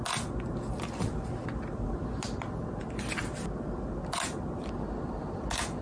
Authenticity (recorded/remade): recorded